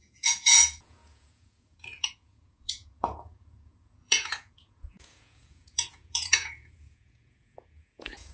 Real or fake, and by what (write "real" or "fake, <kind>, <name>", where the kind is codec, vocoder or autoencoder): fake, vocoder, Vocos